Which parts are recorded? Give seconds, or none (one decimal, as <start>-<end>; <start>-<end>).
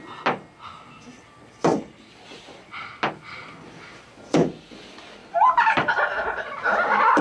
0.0-7.2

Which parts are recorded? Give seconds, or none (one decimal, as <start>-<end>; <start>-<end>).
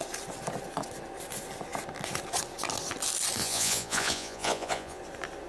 0.0-3.4; 5.0-5.5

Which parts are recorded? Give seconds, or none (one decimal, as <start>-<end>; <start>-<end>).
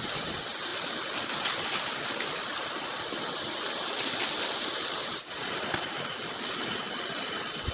0.0-7.7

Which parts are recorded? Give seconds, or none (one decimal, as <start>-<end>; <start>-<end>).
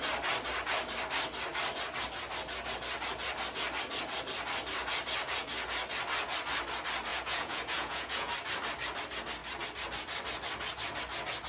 0.0-7.1; 8.3-11.5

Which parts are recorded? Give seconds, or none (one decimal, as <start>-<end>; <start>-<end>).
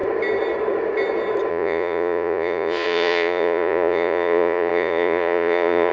0.0-1.5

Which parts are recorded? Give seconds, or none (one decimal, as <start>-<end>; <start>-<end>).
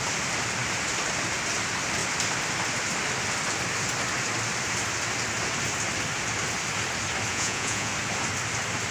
0.0-7.3; 7.9-8.9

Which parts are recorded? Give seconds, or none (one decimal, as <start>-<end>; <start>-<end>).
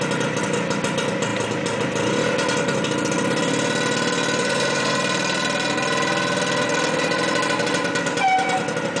0.0-4.4; 5.0-9.0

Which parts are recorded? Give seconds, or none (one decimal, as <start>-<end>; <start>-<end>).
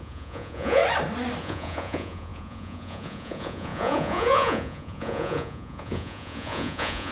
0.8-1.4